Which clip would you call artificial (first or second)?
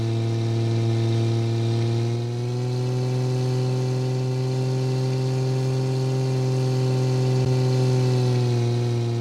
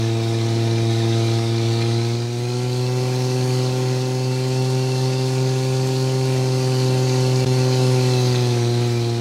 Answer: second